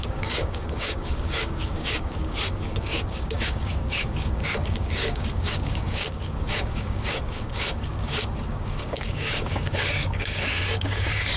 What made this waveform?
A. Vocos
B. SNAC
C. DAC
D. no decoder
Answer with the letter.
C